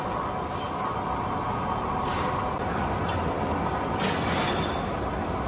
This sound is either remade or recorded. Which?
recorded